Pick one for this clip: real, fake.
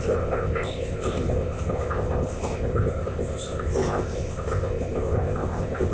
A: fake